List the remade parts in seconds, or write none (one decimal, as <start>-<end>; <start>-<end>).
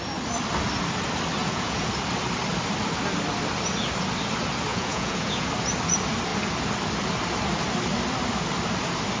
1.4-1.9; 4.7-5.5